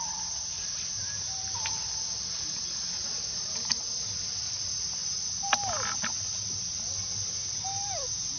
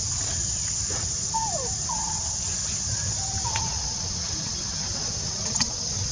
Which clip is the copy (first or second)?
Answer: second